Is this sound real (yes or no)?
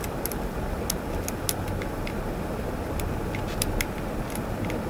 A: yes